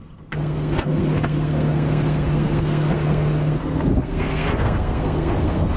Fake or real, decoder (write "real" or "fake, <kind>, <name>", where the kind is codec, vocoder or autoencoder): fake, codec, SNAC